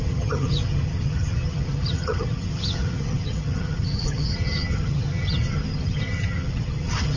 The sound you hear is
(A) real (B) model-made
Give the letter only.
B